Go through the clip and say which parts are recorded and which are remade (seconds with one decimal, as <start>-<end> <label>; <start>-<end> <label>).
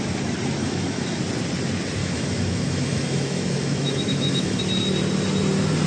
0.0-0.6 recorded; 0.6-1.2 remade; 1.2-2.0 recorded; 2.0-4.6 remade; 4.6-5.9 recorded